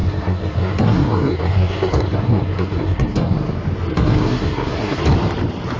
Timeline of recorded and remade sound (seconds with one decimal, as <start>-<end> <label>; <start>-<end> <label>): 0.0-3.5 remade; 3.5-3.9 recorded; 3.9-5.0 remade; 5.0-5.8 recorded